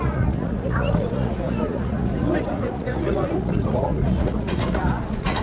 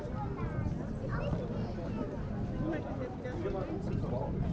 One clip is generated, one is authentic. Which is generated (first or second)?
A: first